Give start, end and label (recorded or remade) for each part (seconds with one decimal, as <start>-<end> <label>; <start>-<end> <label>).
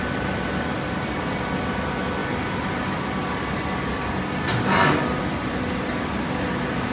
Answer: 0.0-6.9 recorded